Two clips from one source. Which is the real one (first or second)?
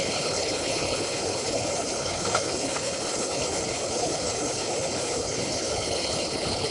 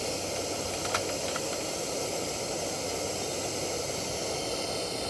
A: second